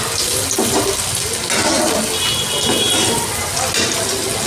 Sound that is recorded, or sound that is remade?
recorded